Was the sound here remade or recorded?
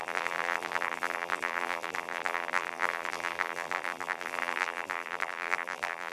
remade